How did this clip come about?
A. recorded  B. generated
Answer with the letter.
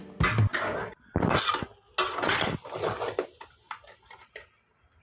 A